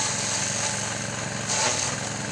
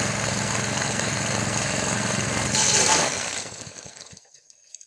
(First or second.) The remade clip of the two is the second